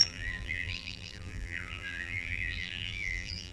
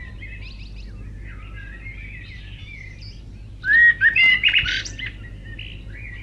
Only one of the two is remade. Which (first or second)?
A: first